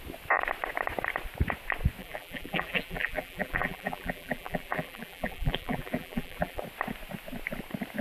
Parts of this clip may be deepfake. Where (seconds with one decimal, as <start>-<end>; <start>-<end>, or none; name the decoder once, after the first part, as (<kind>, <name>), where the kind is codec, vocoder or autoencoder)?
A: 2.0-6.6 (vocoder, BigVGAN v2)